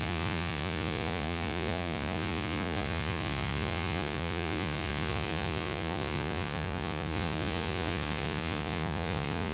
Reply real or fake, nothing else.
fake